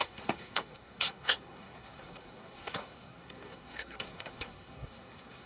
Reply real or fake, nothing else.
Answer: fake